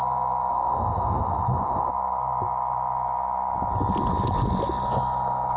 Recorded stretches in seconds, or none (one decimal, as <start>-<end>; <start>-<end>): 0.0-0.5; 1.9-5.6